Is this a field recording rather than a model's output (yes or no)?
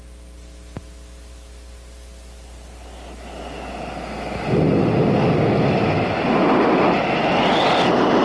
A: yes